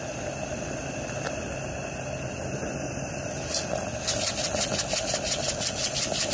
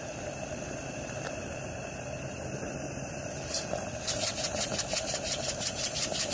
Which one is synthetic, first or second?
second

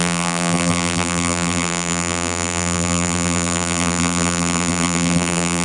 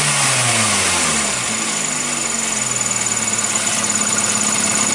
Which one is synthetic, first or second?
first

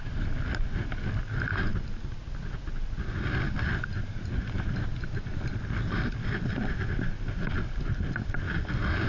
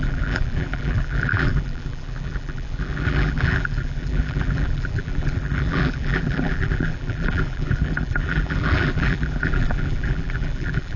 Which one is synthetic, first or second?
second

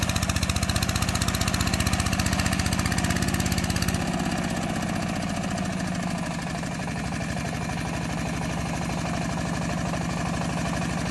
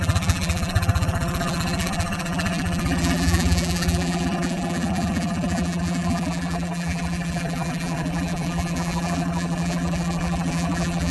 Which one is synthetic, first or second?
second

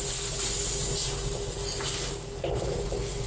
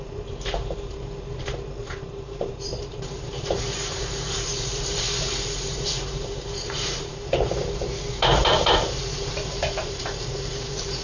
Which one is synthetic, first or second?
second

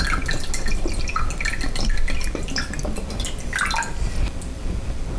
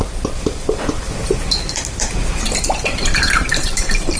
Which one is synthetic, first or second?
second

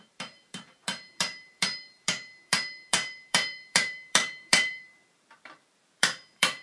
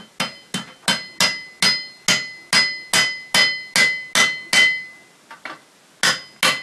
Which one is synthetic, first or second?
first